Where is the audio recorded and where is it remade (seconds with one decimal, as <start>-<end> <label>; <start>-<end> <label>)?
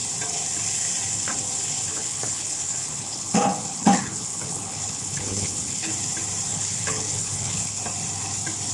0.0-1.9 recorded; 1.9-5.9 remade; 5.9-6.5 recorded; 6.5-7.8 remade; 7.8-8.7 recorded